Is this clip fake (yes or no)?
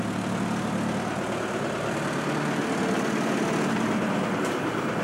no